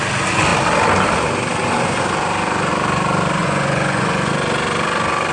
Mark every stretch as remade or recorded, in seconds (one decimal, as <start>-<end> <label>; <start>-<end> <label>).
0.0-3.4 recorded; 3.4-4.3 remade; 4.3-5.3 recorded